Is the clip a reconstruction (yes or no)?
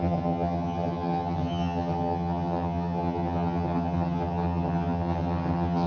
yes